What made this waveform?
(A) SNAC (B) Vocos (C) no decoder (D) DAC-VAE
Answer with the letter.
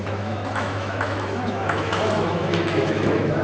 D